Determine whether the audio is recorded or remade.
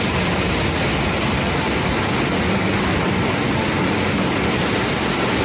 recorded